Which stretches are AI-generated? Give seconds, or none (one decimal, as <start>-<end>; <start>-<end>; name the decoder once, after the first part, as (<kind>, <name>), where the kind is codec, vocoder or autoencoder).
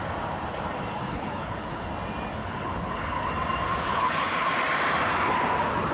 1.0-1.9 (codec, HILCodec); 2.4-3.3; 3.9-4.5